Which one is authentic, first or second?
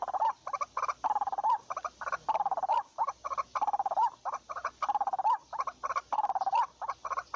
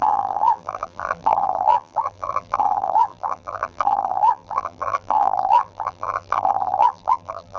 first